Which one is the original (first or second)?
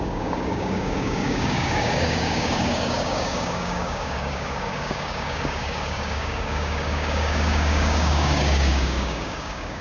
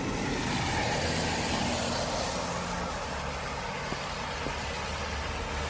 second